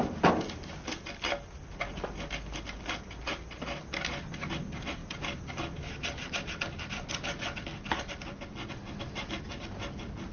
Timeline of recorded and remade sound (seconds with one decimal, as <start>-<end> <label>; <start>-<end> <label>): 0.0-10.3 recorded